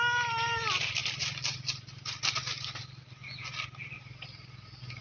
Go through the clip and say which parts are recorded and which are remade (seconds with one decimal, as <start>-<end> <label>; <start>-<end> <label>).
0.0-5.0 recorded

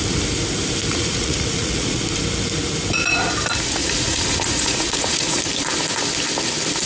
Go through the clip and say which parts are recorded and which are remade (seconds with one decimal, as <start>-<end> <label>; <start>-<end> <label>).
0.0-0.9 recorded; 0.9-2.0 remade; 2.0-3.8 recorded; 3.8-5.4 remade; 5.4-6.9 recorded

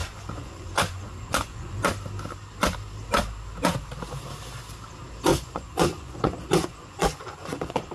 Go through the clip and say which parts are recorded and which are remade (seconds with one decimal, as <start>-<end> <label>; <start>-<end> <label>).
0.0-1.8 remade; 1.8-5.3 recorded; 5.3-7.9 remade